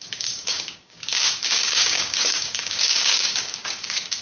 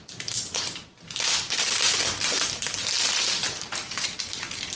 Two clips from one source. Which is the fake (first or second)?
first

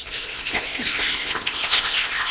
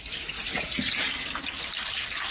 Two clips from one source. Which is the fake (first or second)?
first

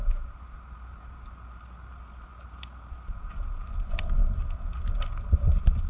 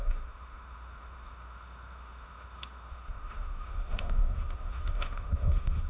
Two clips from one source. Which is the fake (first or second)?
second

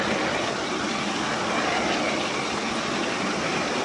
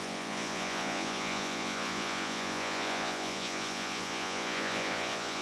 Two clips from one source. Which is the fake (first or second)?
second